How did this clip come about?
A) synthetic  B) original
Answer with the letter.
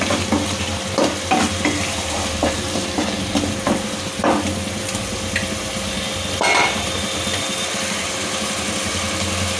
B